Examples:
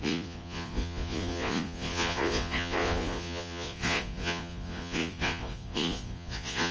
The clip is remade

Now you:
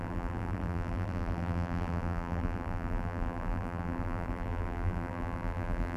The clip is remade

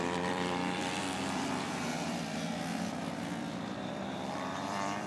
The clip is remade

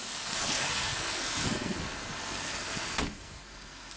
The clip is remade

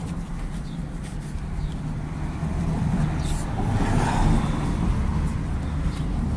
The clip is recorded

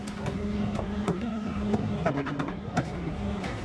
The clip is remade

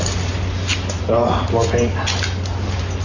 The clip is recorded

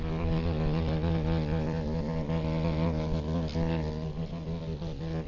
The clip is recorded